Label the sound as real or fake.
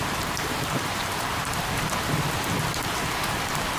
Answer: fake